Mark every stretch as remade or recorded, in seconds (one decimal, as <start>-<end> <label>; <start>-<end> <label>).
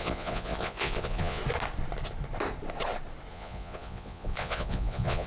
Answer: 0.0-1.4 remade; 1.4-3.3 recorded; 3.3-5.3 remade